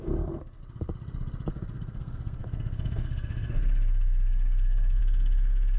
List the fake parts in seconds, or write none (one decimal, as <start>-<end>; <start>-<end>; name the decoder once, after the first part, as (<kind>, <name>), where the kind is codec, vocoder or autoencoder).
0.0-0.6 (codec, SNAC); 1.5-5.8